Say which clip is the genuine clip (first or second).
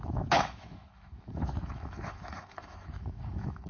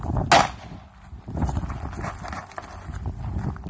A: second